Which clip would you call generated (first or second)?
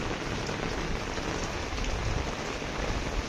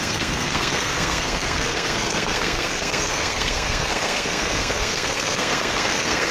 second